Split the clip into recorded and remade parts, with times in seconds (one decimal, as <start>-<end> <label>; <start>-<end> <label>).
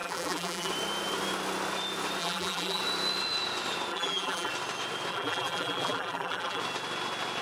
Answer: 0.0-0.7 remade; 0.7-2.2 recorded; 2.2-2.8 remade; 2.8-3.9 recorded; 3.9-4.5 remade; 4.5-5.1 recorded; 5.1-6.6 remade; 6.6-7.4 recorded